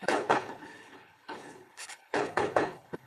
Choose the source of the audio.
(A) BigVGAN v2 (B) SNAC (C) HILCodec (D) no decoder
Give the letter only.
C